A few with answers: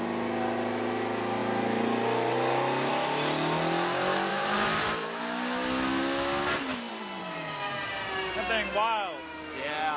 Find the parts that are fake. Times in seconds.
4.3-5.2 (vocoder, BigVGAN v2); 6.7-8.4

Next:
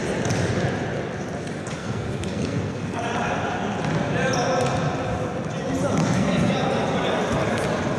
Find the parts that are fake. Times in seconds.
1.6-3.0 (codec, SNAC); 6.0-6.5

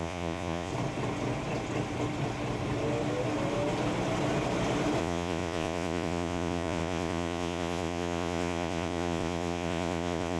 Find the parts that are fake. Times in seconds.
0.0-0.7 (vocoder, Vocos); 5.0-10.4

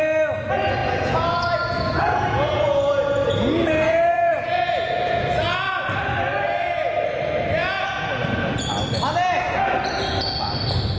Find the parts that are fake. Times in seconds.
0.8-5.6 (vocoder, Vocos); 7.6-8.7

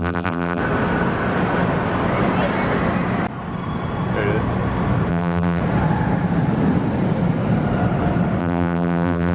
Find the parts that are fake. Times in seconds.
0.0-0.6 (vocoder, BigVGAN v2); 5.1-5.6; 8.4-9.3

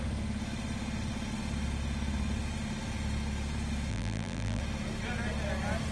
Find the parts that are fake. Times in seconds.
3.9-4.6 (vocoder, BigVGAN v2)